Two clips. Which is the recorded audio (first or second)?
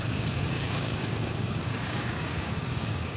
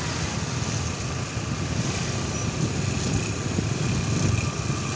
second